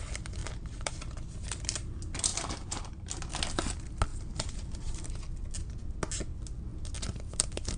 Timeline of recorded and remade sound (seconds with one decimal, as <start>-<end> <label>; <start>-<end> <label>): 0.0-0.4 recorded; 0.4-0.9 remade; 0.9-2.3 recorded; 2.3-3.2 remade; 3.2-4.1 recorded; 4.1-5.1 remade; 5.1-7.8 recorded